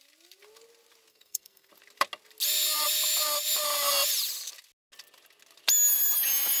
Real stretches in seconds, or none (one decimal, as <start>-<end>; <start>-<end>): 0.0-1.1; 1.7-6.6